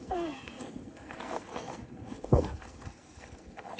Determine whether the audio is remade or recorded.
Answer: remade